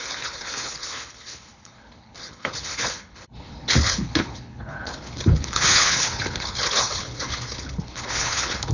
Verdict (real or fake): fake